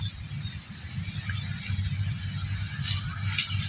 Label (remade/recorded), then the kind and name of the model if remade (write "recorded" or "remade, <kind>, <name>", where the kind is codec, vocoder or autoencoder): recorded